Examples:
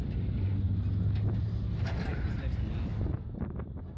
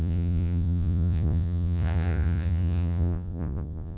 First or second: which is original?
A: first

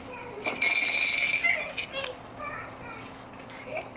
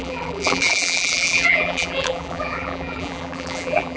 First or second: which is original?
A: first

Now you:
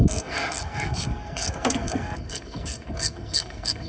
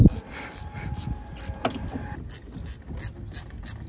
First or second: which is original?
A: second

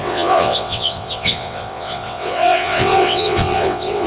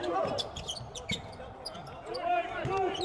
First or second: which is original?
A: second